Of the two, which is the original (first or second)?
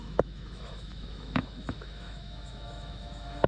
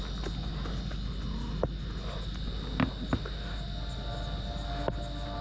second